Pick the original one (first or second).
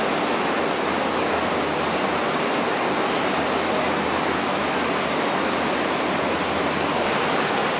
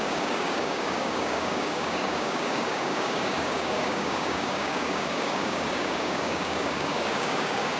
first